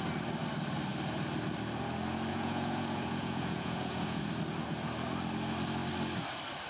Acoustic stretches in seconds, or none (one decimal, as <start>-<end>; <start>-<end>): 0.0-2.3; 4.2-6.7